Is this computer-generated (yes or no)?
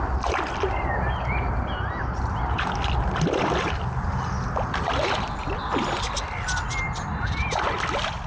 no